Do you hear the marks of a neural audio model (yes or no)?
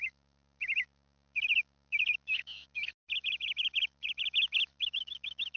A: yes